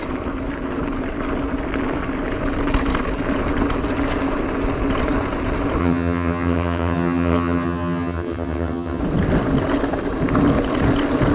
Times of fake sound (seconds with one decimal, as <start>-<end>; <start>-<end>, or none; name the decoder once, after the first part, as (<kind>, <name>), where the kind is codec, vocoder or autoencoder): 5.8-9.0 (vocoder, HiFi-GAN)